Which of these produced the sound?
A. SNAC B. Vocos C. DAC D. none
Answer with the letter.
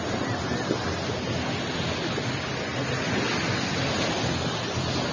D